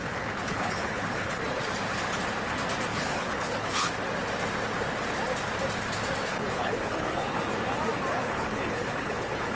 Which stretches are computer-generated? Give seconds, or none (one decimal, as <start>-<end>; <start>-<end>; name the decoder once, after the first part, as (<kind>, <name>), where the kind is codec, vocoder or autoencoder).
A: 0.0-1.4 (codec, HILCodec); 2.9-3.9; 6.3-7.4; 8.1-9.6